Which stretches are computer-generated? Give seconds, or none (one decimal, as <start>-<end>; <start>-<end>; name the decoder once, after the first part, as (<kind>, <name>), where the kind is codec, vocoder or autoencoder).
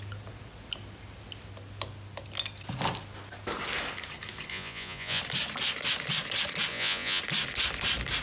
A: 4.5-5.2 (vocoder, Vocos); 6.7-7.2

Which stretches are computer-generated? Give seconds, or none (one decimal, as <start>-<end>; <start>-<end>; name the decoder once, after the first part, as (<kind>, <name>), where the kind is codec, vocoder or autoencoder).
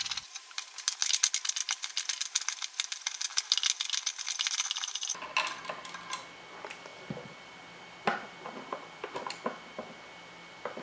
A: none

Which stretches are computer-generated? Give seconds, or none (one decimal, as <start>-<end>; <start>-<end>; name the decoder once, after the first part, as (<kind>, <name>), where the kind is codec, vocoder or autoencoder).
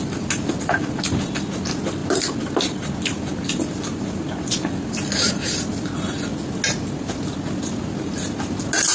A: none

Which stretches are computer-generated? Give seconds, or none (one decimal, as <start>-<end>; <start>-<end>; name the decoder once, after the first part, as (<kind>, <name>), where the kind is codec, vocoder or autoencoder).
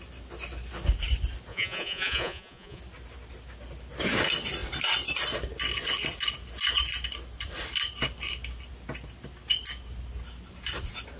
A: 1.5-2.8 (vocoder, Vocos)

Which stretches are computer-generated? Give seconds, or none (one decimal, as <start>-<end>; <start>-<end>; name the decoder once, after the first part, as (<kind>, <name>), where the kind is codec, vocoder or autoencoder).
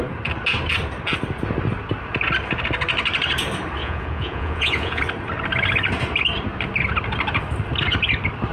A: 3.8-5.0 (vocoder, Vocos)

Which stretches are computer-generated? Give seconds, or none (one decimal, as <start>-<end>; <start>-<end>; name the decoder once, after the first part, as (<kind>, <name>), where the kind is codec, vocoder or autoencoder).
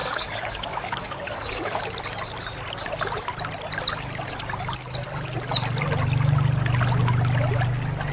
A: 0.0-1.8 (codec, DAC)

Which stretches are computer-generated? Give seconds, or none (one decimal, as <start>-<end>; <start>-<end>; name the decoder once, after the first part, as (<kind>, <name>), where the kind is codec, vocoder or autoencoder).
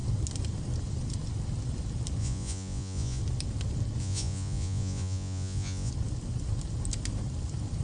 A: 2.2-3.2 (vocoder, Vocos); 4.0-5.9